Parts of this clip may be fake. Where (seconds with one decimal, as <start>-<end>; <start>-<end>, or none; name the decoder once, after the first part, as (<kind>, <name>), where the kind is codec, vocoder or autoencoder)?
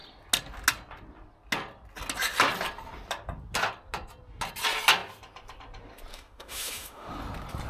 6.1-7.1 (autoencoder, DAC-VAE)